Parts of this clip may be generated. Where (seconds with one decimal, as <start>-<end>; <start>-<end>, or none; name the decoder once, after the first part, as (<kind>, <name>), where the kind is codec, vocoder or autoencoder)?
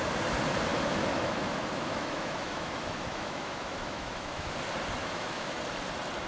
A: 0.7-4.5 (autoencoder, DAC-VAE); 5.0-5.6